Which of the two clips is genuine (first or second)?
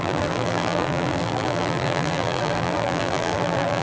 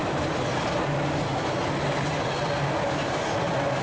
second